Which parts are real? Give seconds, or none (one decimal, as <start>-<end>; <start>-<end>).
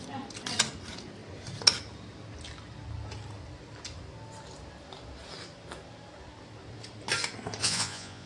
0.0-7.6